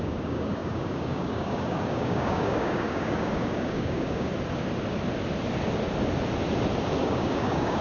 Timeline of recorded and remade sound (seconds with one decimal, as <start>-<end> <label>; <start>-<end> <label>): 0.0-4.3 remade; 4.3-7.0 recorded; 7.0-7.8 remade